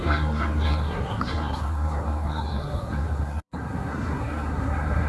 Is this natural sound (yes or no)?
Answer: no